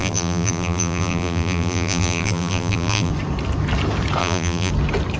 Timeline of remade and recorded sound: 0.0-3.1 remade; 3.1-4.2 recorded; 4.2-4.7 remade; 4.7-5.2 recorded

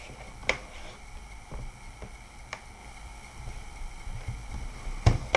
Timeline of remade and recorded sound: 0.0-0.4 recorded; 0.4-1.7 remade; 1.7-2.8 recorded; 2.8-5.4 remade

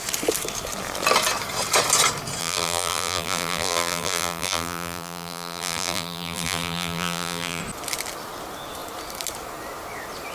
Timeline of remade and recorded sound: 0.0-2.4 recorded; 2.4-7.6 remade; 7.6-10.3 recorded

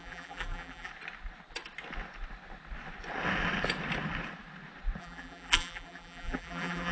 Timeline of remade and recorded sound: 0.0-0.9 remade; 0.9-5.0 recorded; 5.0-6.9 remade

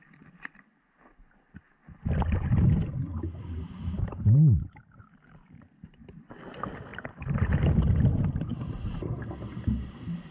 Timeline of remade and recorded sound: 0.0-3.1 recorded; 3.1-6.2 remade; 6.2-6.9 recorded; 6.9-7.5 remade; 7.5-8.5 recorded; 8.5-9.0 remade; 9.0-10.3 recorded

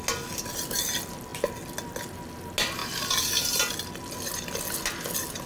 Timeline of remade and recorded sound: 0.0-5.5 recorded

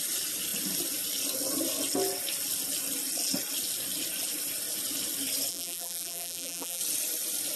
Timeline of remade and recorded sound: 0.0-5.5 recorded; 5.5-6.8 remade; 6.8-7.6 recorded